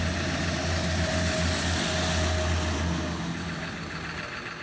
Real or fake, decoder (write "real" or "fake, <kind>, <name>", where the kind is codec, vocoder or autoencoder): real